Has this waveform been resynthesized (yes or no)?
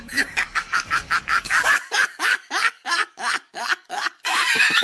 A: yes